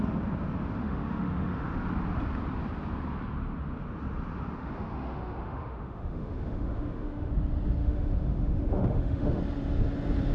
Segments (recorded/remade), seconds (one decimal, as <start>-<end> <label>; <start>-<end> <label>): 0.0-0.8 recorded; 0.8-1.8 remade; 1.8-4.6 recorded; 4.6-7.3 remade; 7.3-7.8 recorded; 7.8-9.4 remade; 9.4-10.3 recorded

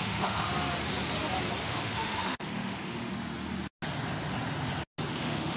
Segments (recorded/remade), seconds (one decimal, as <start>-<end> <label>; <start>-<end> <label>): 0.0-0.5 remade; 0.5-1.6 recorded; 1.6-3.1 remade; 3.1-5.1 recorded; 5.1-5.6 remade

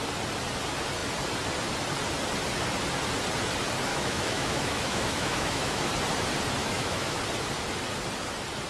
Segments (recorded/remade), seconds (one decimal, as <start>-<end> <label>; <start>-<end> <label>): 0.0-3.9 recorded; 3.9-5.9 remade; 5.9-6.6 recorded; 6.6-7.2 remade; 7.2-8.7 recorded

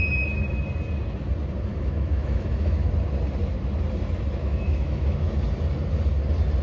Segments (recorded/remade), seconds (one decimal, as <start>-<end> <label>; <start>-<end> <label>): 0.0-1.7 recorded; 1.7-2.9 remade; 2.9-4.4 recorded; 4.4-5.4 remade; 5.4-6.6 recorded

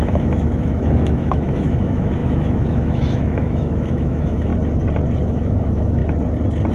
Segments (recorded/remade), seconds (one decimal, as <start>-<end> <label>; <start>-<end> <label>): 0.0-4.5 remade; 4.5-5.2 recorded; 5.2-6.0 remade; 6.0-6.7 recorded

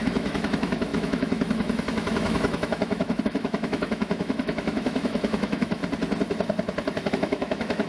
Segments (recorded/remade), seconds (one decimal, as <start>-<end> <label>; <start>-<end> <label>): 0.0-5.8 remade; 5.8-7.1 recorded; 7.1-7.9 remade

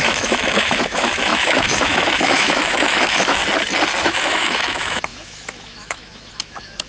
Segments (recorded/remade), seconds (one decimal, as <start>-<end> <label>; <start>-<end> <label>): 0.0-3.4 remade; 3.4-4.0 recorded; 4.0-6.9 remade

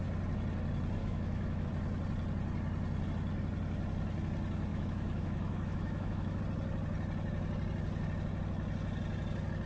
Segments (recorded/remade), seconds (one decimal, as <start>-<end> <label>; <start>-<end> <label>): 0.0-1.0 recorded; 1.0-1.7 remade; 1.7-4.7 recorded; 4.7-6.4 remade; 6.4-9.7 recorded